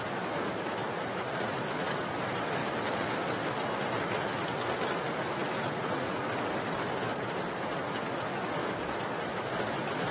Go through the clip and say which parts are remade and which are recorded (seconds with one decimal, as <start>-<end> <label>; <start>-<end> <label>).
0.0-0.8 recorded; 0.8-1.5 remade; 1.5-8.6 recorded; 8.6-9.3 remade; 9.3-10.1 recorded